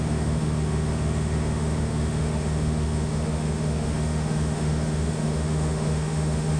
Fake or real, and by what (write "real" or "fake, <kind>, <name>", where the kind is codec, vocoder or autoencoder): fake, autoencoder, DAC-VAE